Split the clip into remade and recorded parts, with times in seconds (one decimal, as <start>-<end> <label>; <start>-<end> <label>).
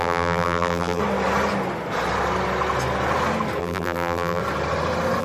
0.0-1.0 remade; 1.0-3.6 recorded; 3.6-4.4 remade; 4.4-5.2 recorded